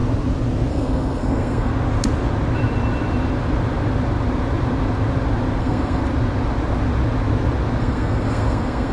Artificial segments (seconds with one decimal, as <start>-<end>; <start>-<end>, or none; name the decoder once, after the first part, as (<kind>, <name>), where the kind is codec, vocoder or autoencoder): 0.7-1.7 (codec, SNAC); 5.6-6.0; 7.8-8.9